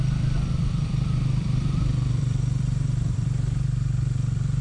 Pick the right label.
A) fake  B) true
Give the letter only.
A